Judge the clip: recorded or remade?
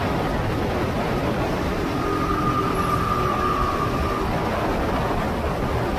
recorded